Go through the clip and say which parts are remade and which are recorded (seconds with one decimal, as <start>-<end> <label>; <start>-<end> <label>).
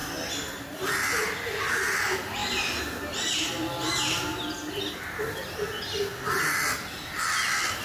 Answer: 0.0-7.8 recorded